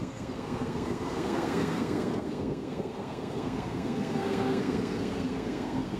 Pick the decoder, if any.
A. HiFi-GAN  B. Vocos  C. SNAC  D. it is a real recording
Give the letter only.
C